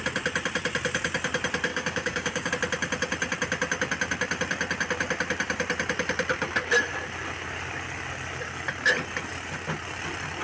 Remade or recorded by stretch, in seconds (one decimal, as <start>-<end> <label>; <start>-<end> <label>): 0.0-1.7 recorded; 1.7-2.5 remade; 2.5-10.4 recorded